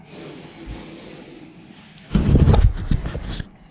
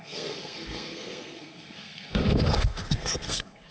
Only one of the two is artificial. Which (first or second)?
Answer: second